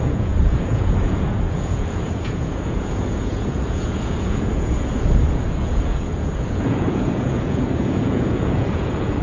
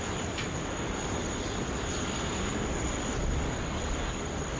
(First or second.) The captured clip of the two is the second